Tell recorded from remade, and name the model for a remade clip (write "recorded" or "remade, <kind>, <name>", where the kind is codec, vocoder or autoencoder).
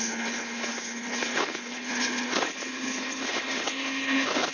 remade, codec, HILCodec